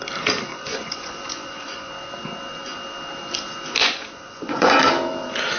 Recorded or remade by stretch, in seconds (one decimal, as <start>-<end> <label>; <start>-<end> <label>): 0.0-0.5 recorded; 0.5-1.9 remade; 1.9-3.8 recorded; 3.8-4.8 remade; 4.8-5.6 recorded

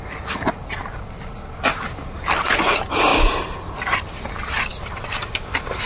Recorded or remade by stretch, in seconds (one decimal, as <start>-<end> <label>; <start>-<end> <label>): 0.0-4.7 recorded; 4.7-5.3 remade; 5.3-5.9 recorded

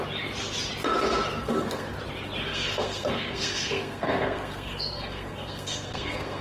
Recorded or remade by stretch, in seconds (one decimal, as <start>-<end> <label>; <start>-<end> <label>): 0.0-1.4 recorded; 1.4-2.0 remade; 2.0-2.5 recorded; 2.5-6.4 remade

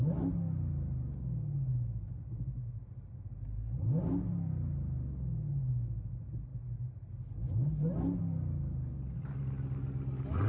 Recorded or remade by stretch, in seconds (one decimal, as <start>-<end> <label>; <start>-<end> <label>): 0.0-10.5 recorded

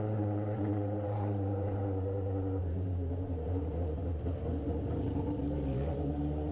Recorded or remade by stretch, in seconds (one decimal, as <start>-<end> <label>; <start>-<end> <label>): 0.0-1.8 remade; 1.8-2.6 recorded; 2.6-4.0 remade; 4.0-6.5 recorded